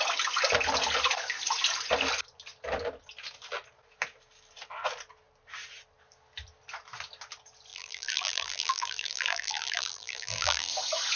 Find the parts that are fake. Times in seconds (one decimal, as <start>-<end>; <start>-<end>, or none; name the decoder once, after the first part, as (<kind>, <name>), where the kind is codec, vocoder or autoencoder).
7.7-10.7 (vocoder, BigVGAN v2)